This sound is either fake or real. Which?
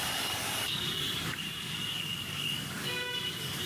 fake